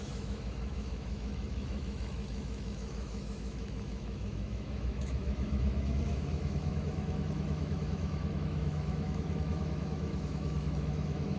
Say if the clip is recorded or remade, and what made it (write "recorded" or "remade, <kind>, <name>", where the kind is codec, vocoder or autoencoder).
remade, autoencoder, DAC-VAE